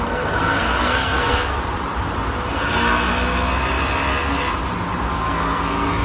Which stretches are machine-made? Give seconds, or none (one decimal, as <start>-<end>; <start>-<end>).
0.0-1.6; 2.5-3.1; 5.1-6.0